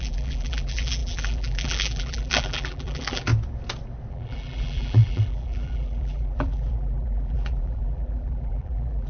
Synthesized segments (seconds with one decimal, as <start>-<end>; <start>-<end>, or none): 0.0-3.3; 4.1-9.1